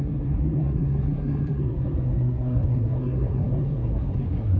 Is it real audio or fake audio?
fake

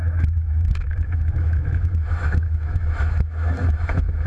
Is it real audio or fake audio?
fake